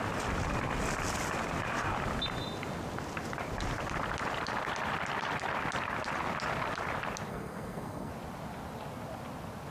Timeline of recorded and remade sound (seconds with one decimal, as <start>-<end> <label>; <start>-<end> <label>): 0.0-7.3 recorded; 7.3-8.1 remade; 8.1-9.7 recorded